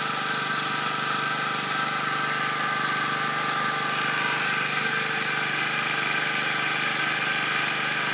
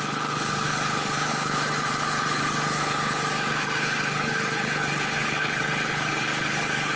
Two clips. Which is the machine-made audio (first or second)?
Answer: second